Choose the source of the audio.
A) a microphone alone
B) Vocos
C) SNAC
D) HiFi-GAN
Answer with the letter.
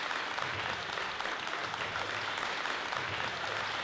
A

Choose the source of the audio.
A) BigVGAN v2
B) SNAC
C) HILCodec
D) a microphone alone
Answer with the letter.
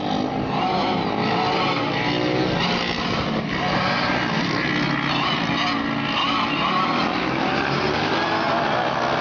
D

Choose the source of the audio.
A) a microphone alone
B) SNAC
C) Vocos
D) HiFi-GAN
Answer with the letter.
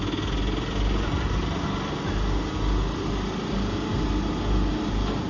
A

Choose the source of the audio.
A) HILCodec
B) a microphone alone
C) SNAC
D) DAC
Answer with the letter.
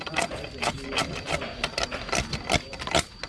B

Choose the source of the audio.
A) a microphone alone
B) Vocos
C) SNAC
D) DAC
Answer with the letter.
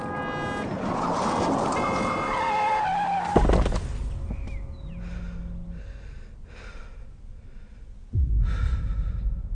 A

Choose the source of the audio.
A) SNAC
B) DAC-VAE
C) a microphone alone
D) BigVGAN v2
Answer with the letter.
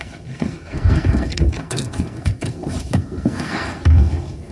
A